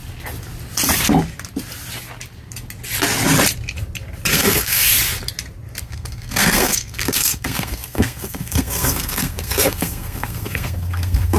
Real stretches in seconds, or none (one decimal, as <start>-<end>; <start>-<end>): 0.0-4.3; 4.9-5.8